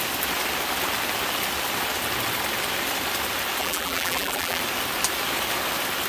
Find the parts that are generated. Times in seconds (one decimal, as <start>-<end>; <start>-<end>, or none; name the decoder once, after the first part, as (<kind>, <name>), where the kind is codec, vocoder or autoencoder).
3.6-4.6 (vocoder, BigVGAN v2)

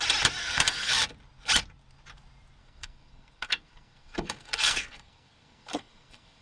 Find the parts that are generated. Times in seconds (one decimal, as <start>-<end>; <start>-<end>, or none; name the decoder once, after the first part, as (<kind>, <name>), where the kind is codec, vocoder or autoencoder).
0.4-1.0 (codec, SNAC); 2.6-6.4

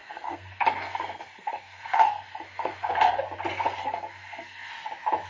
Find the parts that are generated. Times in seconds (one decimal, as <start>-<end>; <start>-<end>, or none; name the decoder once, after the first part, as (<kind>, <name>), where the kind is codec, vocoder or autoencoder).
0.0-3.2 (codec, SNAC); 3.8-4.7

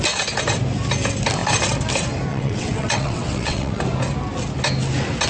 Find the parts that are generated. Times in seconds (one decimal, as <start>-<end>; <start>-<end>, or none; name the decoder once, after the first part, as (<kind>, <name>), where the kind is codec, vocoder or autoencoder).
2.3-3.8 (vocoder, WaveNeXt)

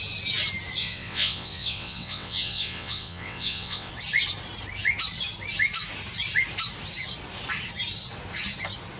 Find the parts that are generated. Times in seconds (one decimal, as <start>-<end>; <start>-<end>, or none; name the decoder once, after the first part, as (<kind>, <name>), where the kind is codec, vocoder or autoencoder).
0.8-3.9 (vocoder, WaveNeXt)

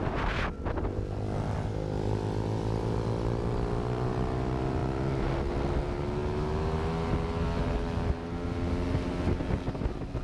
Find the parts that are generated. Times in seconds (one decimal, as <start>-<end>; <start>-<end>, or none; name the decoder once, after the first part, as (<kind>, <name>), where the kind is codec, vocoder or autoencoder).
none